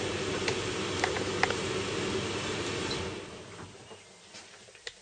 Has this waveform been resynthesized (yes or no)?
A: no